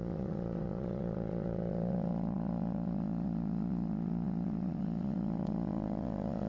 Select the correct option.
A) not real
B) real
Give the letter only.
A